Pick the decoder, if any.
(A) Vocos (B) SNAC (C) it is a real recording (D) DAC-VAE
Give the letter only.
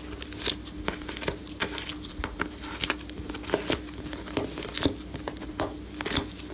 C